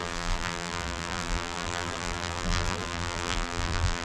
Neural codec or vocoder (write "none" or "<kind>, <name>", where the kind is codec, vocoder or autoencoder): vocoder, BigVGAN v2